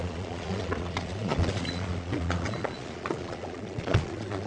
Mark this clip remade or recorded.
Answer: remade